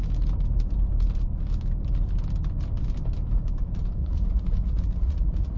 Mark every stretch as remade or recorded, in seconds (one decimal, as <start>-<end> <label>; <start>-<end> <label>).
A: 0.0-4.0 recorded; 4.0-5.6 remade